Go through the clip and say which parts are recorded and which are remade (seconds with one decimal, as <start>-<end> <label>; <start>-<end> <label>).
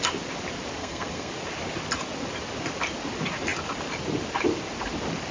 0.0-0.8 recorded; 0.8-1.3 remade; 1.3-5.3 recorded